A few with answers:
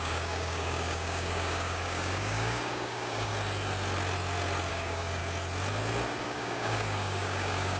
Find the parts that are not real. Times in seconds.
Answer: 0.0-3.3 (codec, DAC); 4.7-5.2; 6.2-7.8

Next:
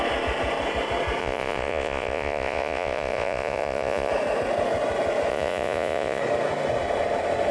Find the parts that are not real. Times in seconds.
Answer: 1.2-4.1 (vocoder, Vocos); 5.3-6.2